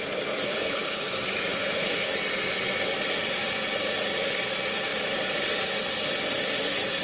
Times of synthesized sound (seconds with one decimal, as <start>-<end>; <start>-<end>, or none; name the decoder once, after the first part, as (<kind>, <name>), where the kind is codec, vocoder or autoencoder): 0.4-1.1 (codec, HILCodec); 1.5-2.2